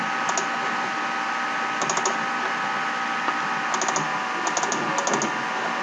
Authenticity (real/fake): real